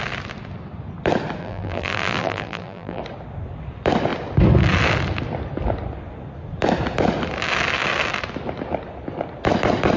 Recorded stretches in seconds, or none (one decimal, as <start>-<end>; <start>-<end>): 0.0-1.4; 3.0-10.0